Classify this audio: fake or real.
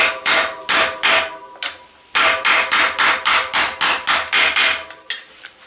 real